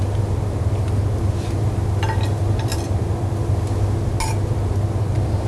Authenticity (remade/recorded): recorded